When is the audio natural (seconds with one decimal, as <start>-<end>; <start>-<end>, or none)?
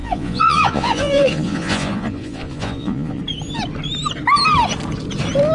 3.2-5.5